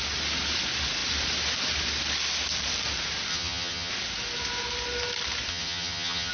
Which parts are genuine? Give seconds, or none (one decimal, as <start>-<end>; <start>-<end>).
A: 0.0-3.3; 3.9-5.5